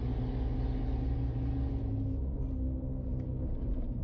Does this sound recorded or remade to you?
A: recorded